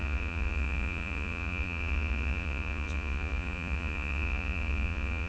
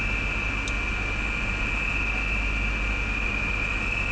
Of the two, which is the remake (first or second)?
first